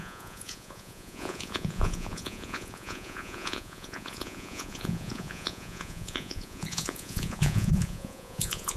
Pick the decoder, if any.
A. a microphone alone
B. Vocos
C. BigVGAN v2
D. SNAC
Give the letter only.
B